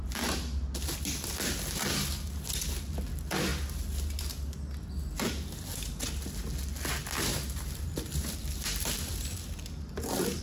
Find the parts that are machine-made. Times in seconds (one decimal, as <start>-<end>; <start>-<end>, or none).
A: 7.3-10.4